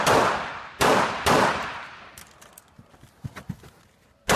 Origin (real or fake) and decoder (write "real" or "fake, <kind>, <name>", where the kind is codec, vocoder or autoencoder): real